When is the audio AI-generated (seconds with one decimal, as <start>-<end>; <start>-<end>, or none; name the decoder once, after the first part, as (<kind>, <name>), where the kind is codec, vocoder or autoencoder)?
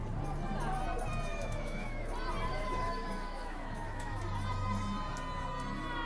1.3-2.1 (autoencoder, DAC-VAE); 2.5-4.2